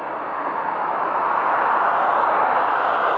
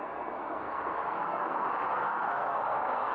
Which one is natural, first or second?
first